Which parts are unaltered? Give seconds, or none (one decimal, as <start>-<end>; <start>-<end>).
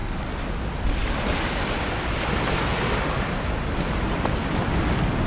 0.0-5.3